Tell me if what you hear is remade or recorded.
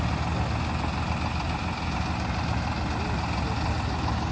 recorded